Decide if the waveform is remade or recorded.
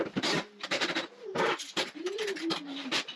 remade